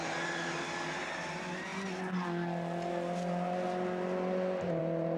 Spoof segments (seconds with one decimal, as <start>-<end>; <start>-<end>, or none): none